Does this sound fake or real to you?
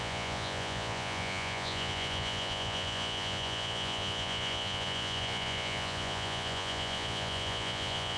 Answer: fake